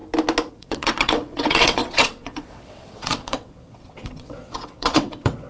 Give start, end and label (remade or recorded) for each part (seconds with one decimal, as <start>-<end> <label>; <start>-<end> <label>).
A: 0.0-0.5 recorded; 0.5-5.5 remade

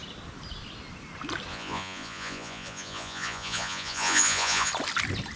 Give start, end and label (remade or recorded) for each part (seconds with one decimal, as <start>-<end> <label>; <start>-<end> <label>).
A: 0.0-1.5 recorded; 1.5-4.7 remade; 4.7-5.4 recorded